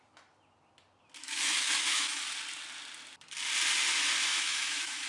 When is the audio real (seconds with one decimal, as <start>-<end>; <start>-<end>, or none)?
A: 0.0-1.2; 2.2-4.3